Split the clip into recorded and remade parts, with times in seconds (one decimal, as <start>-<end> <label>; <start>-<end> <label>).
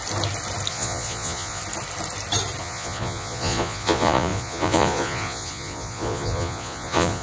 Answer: 0.0-0.7 recorded; 0.7-1.6 remade; 1.6-2.6 recorded; 2.6-7.2 remade